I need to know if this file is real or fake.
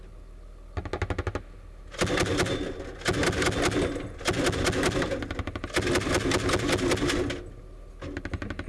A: real